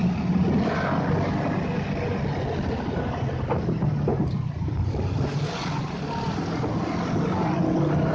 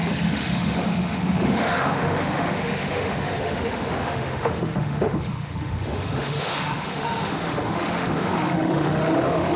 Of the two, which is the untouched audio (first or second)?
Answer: first